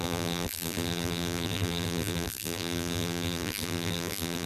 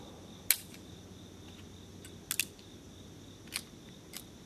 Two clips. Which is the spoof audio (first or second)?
first